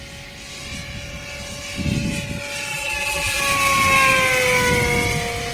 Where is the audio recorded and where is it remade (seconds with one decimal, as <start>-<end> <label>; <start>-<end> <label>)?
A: 0.0-2.7 recorded; 2.7-3.4 remade; 3.4-5.5 recorded